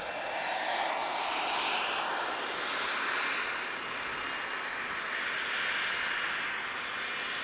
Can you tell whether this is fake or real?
real